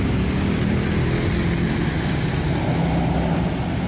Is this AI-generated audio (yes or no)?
no